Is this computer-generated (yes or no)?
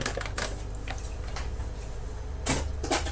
no